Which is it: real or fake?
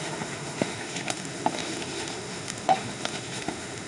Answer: fake